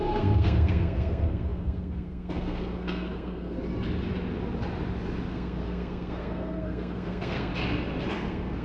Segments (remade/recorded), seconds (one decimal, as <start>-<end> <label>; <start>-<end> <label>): 0.0-3.6 remade; 3.6-5.3 recorded; 5.3-7.5 remade; 7.5-8.1 recorded; 8.1-8.6 remade